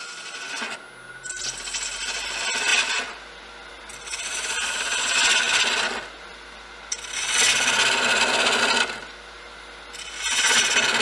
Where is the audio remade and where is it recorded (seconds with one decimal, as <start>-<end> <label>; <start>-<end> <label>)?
0.0-11.0 recorded